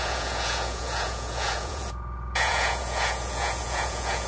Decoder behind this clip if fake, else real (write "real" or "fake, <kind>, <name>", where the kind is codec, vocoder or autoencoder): fake, vocoder, Vocos